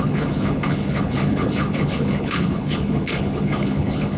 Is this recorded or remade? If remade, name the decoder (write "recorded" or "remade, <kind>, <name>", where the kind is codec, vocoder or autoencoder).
remade, codec, HILCodec